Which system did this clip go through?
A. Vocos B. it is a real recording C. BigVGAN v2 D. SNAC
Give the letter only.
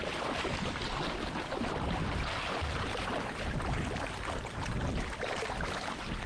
B